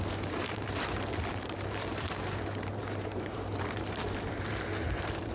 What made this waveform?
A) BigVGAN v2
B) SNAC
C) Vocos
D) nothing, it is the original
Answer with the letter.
A